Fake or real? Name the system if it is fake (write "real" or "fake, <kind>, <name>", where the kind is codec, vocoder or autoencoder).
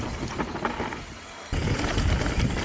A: real